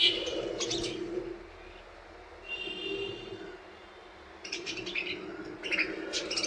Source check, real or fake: real